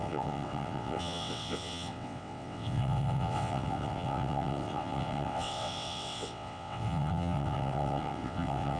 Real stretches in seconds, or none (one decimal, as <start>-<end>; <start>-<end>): none